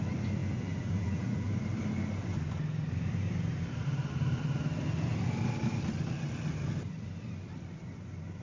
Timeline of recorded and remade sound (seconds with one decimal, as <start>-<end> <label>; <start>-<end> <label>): 0.0-0.4 recorded; 0.4-1.5 remade; 1.5-8.4 recorded